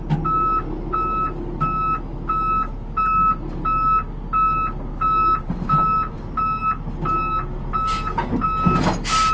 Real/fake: real